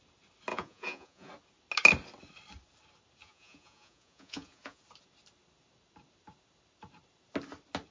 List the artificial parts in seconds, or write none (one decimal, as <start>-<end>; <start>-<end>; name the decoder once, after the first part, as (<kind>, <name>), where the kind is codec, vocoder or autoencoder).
0.5-1.3 (vocoder, Vocos); 3.2-4.8